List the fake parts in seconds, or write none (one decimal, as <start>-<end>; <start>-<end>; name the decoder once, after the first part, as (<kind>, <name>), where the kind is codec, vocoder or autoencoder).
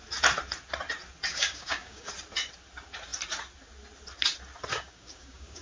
1.3-2.1 (codec, DAC); 4.7-5.6